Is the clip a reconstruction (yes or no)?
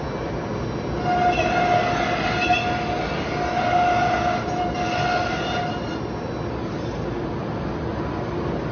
no